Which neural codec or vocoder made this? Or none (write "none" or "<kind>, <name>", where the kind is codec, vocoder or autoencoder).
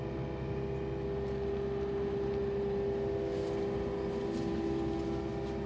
none